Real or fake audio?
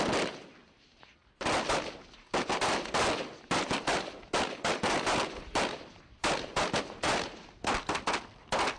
real